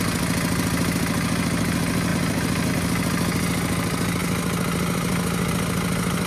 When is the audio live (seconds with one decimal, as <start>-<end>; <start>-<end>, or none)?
0.0-2.1; 2.7-6.3